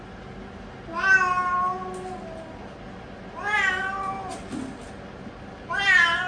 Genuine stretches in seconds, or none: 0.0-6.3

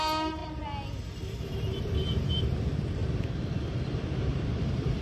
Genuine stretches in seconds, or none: 3.0-3.8

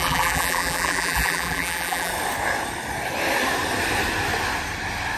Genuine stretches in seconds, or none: 2.1-5.2

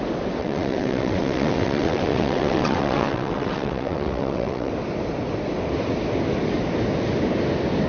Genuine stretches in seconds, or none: 0.0-0.4; 4.7-7.9

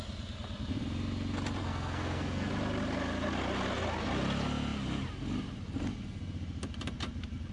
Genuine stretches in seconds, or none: 0.0-1.6; 2.5-7.5

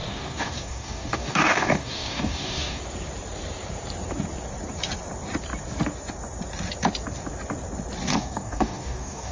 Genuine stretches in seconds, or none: 2.8-8.1

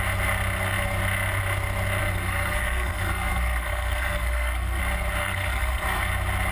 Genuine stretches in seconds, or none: 0.0-2.0; 4.8-5.2; 6.1-6.5